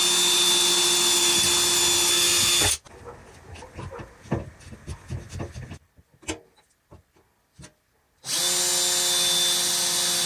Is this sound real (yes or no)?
yes